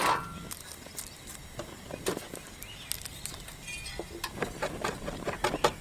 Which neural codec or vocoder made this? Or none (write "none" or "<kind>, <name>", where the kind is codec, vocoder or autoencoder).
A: none